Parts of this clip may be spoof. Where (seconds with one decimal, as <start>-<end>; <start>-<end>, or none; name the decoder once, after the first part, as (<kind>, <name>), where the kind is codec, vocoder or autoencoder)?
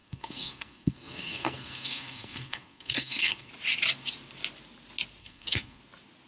0.0-3.5 (codec, SNAC); 5.2-5.8